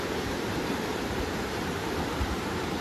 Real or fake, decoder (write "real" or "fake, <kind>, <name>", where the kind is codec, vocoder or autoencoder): fake, vocoder, BigVGAN v2